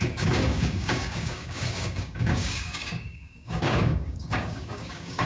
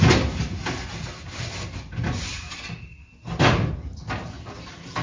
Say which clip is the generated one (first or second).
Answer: first